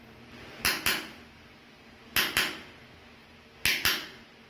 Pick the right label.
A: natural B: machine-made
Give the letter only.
A